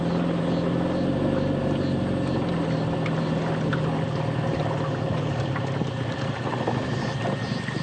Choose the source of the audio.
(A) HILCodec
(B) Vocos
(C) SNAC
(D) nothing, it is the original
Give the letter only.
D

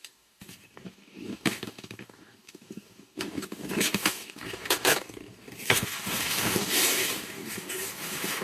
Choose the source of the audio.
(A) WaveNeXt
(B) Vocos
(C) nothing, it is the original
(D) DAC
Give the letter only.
D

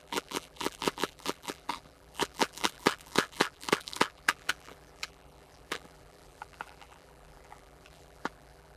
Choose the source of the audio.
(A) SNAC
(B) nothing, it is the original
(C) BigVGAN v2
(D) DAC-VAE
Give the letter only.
C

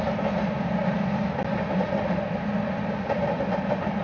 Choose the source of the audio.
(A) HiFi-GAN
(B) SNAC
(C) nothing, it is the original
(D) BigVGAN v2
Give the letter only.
C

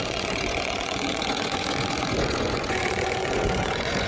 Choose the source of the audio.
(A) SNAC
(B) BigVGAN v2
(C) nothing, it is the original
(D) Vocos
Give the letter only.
D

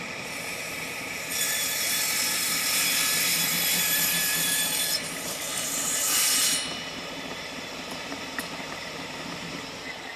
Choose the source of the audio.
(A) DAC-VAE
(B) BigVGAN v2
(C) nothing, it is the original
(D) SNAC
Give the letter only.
B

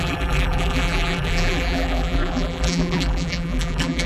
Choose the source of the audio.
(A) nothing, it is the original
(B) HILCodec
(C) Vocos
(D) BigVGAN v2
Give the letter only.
D